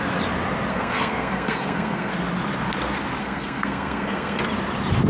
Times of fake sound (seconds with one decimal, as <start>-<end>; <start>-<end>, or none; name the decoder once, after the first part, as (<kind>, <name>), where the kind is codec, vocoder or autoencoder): 0.7-2.1 (codec, SNAC); 3.2-4.4